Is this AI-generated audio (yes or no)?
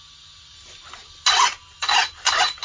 no